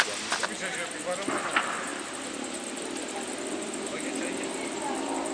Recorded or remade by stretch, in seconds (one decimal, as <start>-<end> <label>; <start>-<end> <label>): 0.0-5.3 remade